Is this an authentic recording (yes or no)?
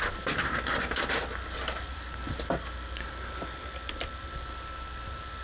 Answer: yes